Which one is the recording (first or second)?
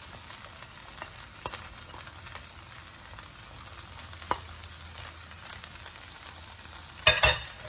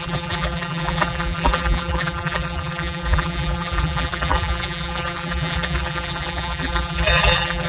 first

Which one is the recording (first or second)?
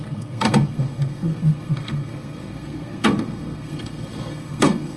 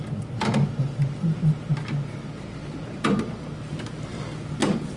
second